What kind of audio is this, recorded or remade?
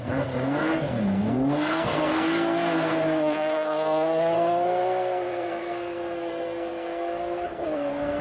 remade